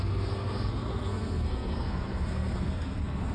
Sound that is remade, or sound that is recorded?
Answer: remade